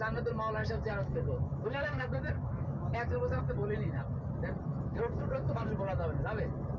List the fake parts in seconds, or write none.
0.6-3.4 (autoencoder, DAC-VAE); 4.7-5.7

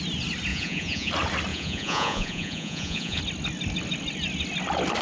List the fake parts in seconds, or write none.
0.5-1.1 (vocoder, Vocos); 1.5-3.2

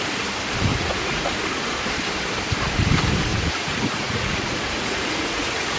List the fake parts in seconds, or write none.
0.7-1.3 (vocoder, Vocos); 3.3-5.8

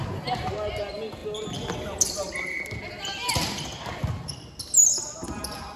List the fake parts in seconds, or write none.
none

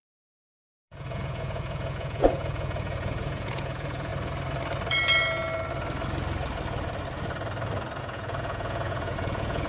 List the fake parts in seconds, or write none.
0.0-4.1 (vocoder, Vocos); 8.0-9.7

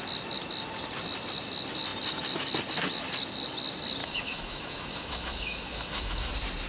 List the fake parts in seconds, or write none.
4.0-6.3 (autoencoder, DAC-VAE)